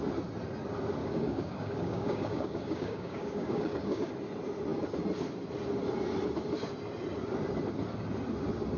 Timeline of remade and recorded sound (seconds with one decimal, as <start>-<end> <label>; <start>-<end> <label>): 0.0-1.0 recorded; 1.0-4.1 remade; 4.1-8.8 recorded